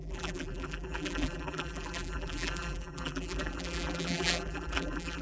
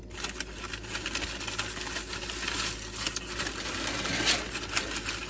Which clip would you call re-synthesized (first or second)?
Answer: first